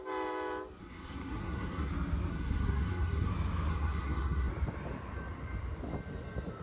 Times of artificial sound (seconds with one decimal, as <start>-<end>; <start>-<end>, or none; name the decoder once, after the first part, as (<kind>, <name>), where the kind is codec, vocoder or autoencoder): 0.8-1.9 (codec, SNAC); 2.3-3.3; 3.7-4.5